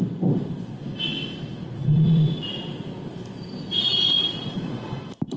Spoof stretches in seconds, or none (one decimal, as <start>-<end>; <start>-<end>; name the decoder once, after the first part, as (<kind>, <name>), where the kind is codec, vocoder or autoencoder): 1.6-2.7 (vocoder, Vocos); 3.7-5.0